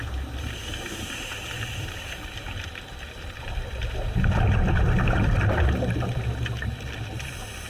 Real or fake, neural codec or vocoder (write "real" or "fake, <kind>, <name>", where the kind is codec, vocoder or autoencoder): real